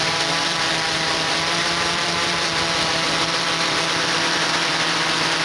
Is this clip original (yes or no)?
no